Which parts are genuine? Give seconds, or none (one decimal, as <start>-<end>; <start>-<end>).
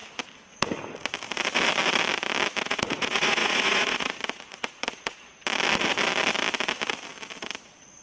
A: 0.0-2.6; 5.4-7.6